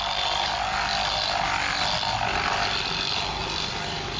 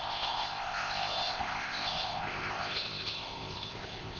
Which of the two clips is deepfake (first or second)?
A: second